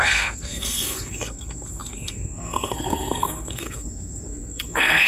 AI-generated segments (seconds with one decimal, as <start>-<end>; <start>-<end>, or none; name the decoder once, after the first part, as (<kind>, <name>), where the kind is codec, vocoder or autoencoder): 0.0-5.1 (codec, SNAC)